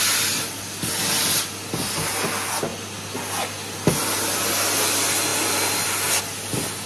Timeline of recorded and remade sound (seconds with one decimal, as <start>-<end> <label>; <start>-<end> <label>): 0.0-6.9 recorded